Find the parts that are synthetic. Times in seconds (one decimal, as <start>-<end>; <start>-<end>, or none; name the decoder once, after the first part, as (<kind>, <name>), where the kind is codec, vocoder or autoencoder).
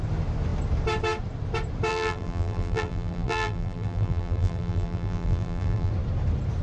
1.9-5.9 (vocoder, BigVGAN v2)